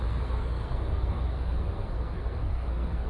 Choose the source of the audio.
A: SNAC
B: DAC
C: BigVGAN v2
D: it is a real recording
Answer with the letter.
A